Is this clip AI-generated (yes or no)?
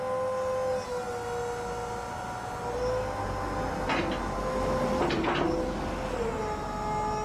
no